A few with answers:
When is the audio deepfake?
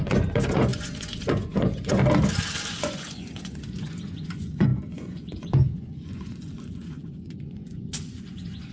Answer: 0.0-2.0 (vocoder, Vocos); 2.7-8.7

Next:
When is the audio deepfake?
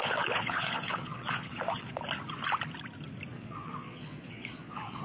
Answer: 0.0-2.0 (vocoder, Vocos); 3.3-5.0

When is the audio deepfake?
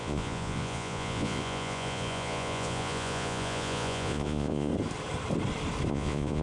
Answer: 0.0-4.7 (vocoder, Vocos); 5.9-6.4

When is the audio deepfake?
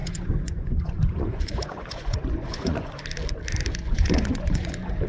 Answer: 0.0-3.0 (vocoder, Vocos); 3.8-5.1